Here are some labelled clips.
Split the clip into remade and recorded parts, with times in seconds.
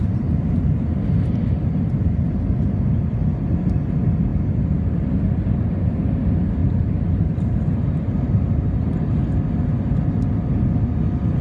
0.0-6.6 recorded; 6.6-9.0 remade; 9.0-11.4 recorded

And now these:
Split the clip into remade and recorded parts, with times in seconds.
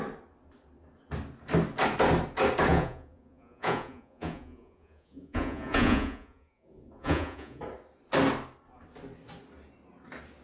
0.0-2.7 recorded; 2.7-7.6 remade; 7.6-10.4 recorded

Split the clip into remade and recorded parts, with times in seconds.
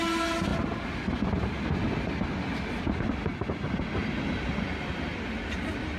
0.0-6.0 recorded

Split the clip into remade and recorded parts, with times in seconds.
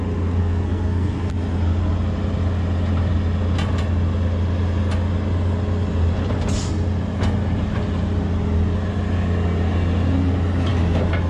0.0-0.4 recorded; 0.4-1.3 remade; 1.3-11.3 recorded